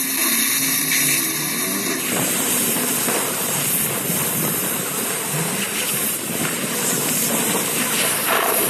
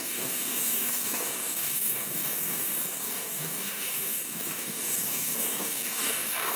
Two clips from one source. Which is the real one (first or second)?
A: first